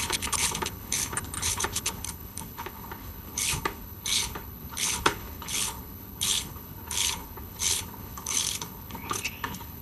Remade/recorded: remade